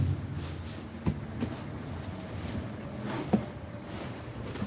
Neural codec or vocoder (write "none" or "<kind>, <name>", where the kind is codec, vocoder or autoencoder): none